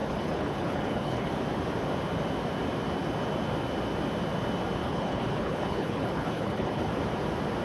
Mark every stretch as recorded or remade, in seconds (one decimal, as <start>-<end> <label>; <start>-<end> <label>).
0.0-1.3 remade; 1.3-4.8 recorded; 4.8-6.9 remade; 6.9-7.6 recorded